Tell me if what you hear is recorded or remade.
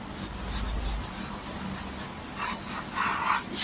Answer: recorded